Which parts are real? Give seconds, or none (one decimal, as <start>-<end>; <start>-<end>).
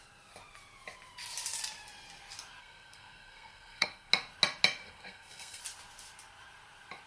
0.0-2.6; 4.1-4.8; 5.6-7.1